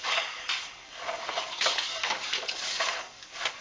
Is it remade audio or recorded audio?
remade